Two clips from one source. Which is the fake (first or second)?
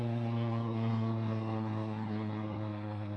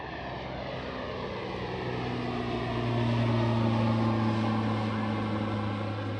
first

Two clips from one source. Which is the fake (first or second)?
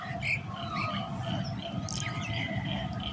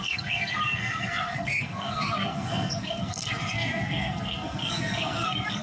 second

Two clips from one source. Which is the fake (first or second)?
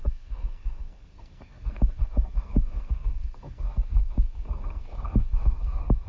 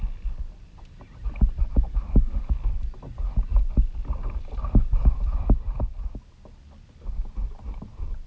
first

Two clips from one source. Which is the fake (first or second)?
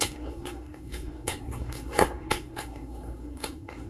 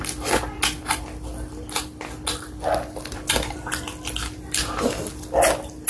first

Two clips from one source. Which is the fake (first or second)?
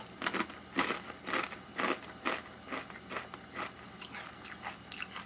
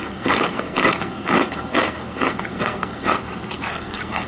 second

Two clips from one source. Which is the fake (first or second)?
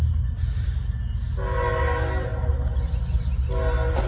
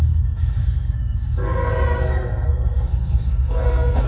second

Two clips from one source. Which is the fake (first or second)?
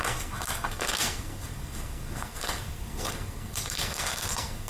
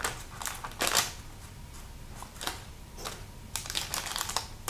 first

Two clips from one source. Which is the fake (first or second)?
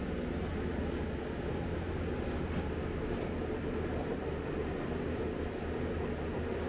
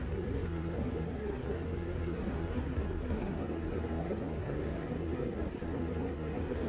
second